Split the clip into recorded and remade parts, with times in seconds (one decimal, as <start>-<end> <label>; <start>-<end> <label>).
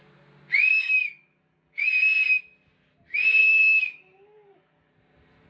0.0-0.7 recorded; 0.7-1.9 remade; 1.9-3.4 recorded; 3.4-4.9 remade; 4.9-5.5 recorded